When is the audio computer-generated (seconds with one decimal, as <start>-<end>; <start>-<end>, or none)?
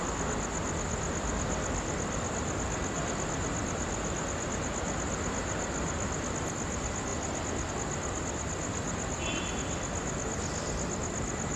none